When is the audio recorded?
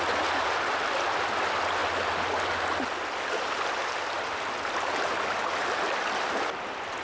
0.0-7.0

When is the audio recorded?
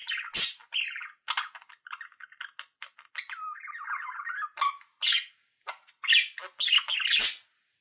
0.0-7.8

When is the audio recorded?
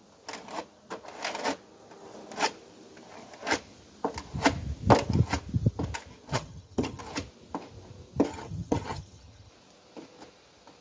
0.0-6.3; 7.0-8.3; 9.5-10.8